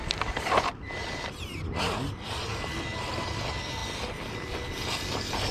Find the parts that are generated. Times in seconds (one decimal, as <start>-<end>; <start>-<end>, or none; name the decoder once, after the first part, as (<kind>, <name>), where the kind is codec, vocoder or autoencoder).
0.0-3.8 (vocoder, BigVGAN v2)